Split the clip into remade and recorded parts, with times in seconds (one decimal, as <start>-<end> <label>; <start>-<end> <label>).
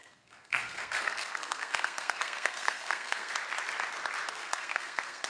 0.0-3.3 remade; 3.3-4.3 recorded; 4.3-5.3 remade